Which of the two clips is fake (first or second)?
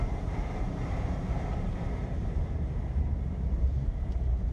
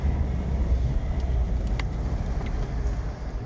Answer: first